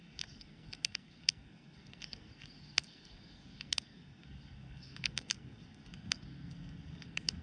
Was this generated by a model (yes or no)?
yes